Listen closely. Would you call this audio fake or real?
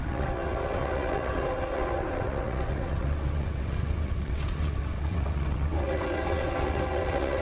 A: fake